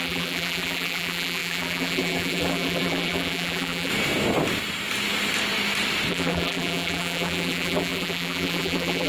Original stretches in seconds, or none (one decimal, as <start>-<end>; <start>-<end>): 3.9-6.1